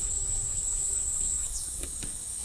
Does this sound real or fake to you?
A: fake